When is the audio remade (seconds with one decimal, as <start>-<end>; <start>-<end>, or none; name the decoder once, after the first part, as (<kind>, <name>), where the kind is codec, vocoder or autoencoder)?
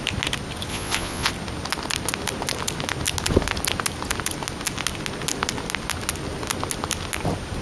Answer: 0.7-1.3 (vocoder, Vocos)